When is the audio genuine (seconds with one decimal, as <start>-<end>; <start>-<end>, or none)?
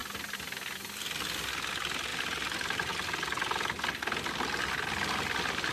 0.0-2.1; 2.9-5.7